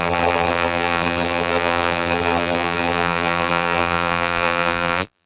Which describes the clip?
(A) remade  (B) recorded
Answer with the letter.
A